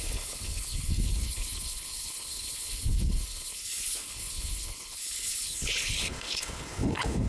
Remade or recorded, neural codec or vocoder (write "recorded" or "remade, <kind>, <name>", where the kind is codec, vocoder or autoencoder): remade, codec, HILCodec